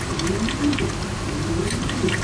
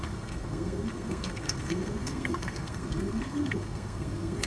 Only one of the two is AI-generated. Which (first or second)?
second